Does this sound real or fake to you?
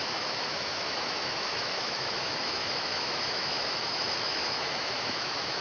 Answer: fake